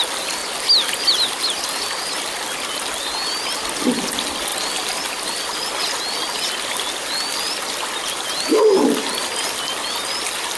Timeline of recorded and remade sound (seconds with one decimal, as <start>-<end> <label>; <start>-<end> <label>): 0.0-10.6 recorded